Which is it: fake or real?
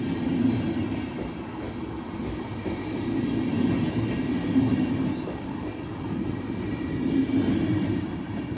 real